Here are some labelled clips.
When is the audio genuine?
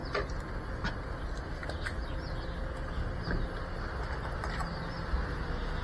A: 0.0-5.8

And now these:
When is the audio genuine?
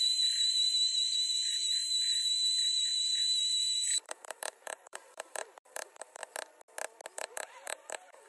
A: 6.2-7.1